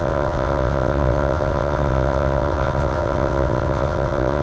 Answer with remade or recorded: remade